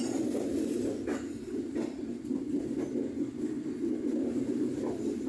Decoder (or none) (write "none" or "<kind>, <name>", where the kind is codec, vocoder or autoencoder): none